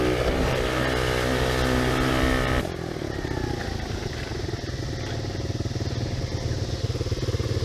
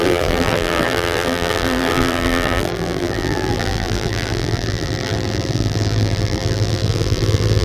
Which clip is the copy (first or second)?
second